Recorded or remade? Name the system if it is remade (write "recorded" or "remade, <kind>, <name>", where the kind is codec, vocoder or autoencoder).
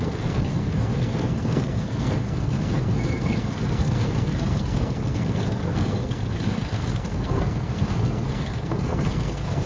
remade, codec, SNAC